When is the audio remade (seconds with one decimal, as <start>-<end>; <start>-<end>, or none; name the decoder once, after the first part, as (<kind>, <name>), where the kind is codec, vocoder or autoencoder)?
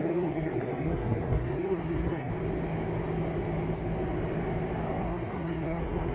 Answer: 0.0-2.3 (codec, SNAC); 5.0-6.1